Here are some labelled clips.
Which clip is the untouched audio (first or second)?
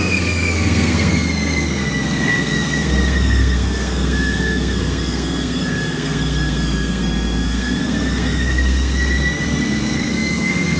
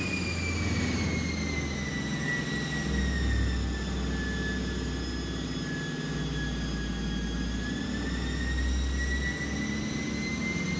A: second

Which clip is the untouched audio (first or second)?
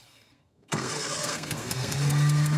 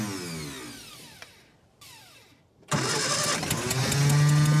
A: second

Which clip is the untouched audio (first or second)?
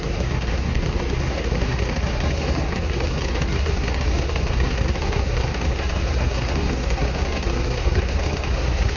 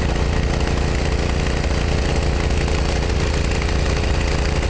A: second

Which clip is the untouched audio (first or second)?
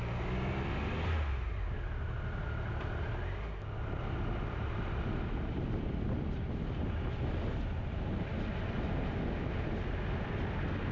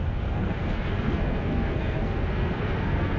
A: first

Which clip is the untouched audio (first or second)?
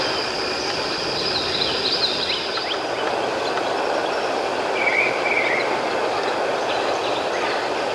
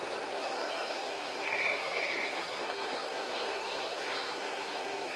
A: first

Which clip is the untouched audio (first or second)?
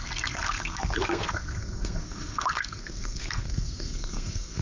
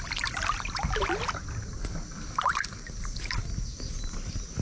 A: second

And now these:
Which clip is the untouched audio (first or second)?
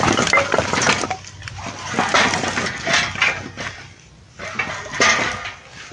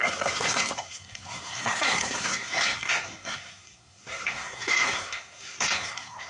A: first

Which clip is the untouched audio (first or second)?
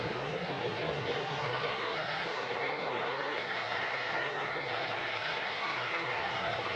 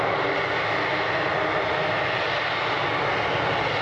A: second